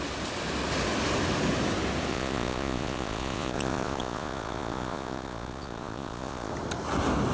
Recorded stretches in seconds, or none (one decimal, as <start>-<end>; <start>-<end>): 0.0-2.1; 6.5-7.3